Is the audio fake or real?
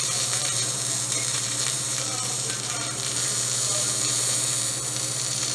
fake